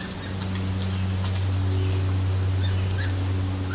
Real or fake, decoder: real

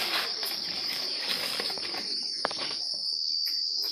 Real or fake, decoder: fake, codec, DAC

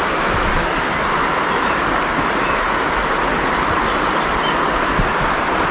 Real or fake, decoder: real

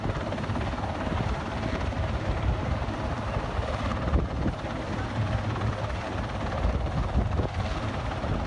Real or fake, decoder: fake, vocoder, BigVGAN v2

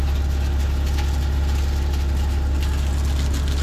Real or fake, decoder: real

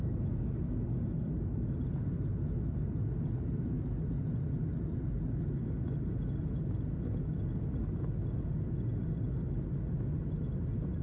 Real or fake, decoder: real